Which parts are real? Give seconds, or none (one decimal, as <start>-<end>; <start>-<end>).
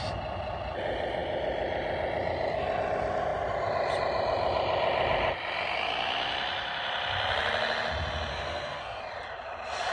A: 0.0-8.3; 9.0-9.9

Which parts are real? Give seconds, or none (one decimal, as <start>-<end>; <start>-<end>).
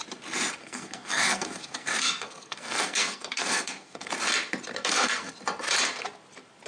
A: 0.0-0.6; 4.1-4.7; 5.3-6.7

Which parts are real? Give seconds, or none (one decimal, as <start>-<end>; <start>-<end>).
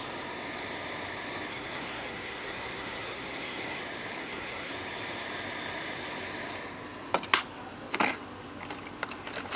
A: 0.0-1.5; 3.8-4.2; 4.7-9.6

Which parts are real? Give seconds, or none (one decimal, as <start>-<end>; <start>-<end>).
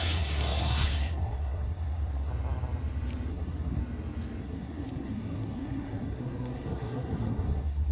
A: 2.3-3.3; 3.8-4.4